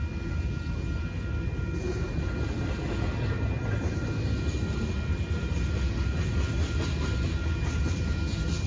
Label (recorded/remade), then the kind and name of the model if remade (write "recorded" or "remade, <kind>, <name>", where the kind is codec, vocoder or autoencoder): recorded